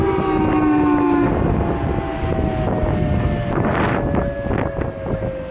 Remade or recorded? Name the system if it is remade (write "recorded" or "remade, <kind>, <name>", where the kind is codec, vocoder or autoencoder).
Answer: recorded